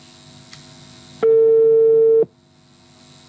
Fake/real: real